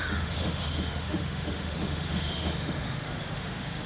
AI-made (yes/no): yes